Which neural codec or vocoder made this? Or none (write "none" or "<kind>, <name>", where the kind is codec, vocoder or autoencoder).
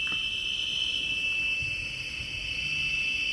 none